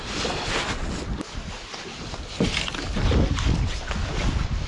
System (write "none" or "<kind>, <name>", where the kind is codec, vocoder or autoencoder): none